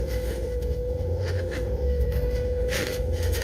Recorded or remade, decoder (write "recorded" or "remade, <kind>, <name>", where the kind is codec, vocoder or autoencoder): remade, autoencoder, DAC-VAE